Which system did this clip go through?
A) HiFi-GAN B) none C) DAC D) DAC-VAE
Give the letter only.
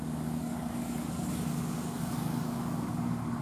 C